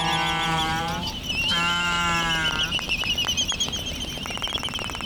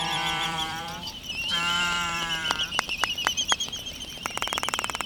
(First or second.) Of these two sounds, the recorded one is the first